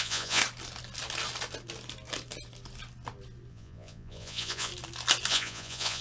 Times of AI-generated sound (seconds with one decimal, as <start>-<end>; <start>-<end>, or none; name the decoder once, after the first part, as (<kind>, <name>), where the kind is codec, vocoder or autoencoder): 0.0-0.4 (vocoder, Vocos); 3.5-4.7; 5.3-6.0